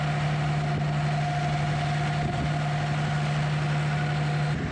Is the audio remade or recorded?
recorded